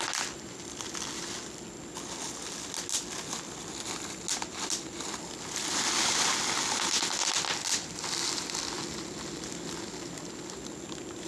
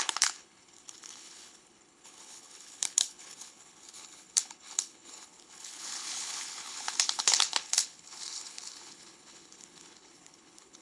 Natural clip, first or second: first